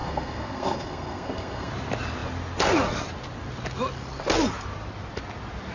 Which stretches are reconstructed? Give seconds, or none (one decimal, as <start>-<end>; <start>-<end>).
0.0-1.7